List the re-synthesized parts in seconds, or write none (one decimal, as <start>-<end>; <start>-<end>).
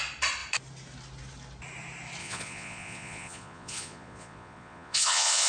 2.2-5.5